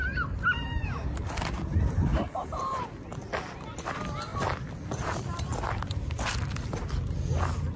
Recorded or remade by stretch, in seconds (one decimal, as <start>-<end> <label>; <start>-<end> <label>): 0.0-1.4 remade; 1.4-7.8 recorded